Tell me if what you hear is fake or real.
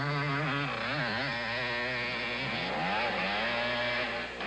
real